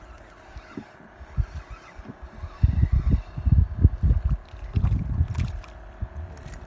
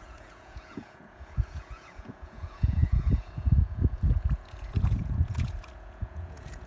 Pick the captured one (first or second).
first